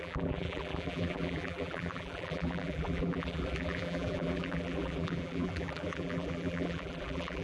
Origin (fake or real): fake